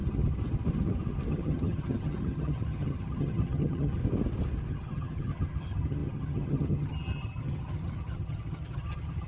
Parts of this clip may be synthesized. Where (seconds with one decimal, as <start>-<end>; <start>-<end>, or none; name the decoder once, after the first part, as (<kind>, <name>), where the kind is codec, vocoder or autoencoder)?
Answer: 1.3-4.0 (vocoder, HiFi-GAN); 4.7-9.3